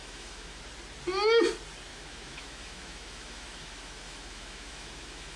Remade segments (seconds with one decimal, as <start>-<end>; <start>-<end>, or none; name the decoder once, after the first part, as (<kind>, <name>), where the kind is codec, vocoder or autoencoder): 0.0-0.6 (autoencoder, DAC-VAE); 1.9-5.4